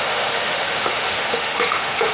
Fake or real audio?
fake